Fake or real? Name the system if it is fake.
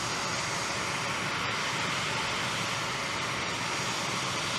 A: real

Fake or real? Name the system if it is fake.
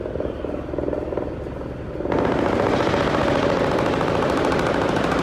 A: real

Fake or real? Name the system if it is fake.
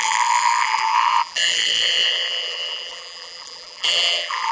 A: fake, vocoder, BigVGAN v2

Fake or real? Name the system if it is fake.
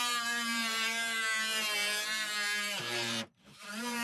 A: fake, vocoder, BigVGAN v2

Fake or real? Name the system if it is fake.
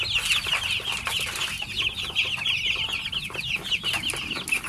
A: real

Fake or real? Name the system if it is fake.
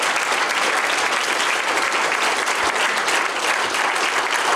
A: fake, vocoder, BigVGAN v2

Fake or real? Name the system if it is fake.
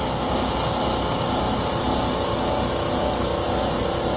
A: real